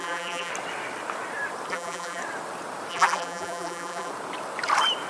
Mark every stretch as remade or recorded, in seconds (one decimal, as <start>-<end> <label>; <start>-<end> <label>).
0.0-0.5 remade; 0.5-1.7 recorded; 1.7-2.2 remade; 2.2-2.9 recorded; 2.9-4.1 remade; 4.1-5.1 recorded